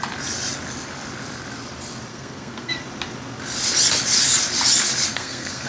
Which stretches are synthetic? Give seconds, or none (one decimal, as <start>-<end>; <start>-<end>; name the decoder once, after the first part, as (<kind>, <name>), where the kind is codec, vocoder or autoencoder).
2.1-2.8 (codec, SNAC); 5.1-5.7